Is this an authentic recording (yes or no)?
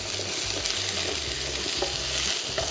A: yes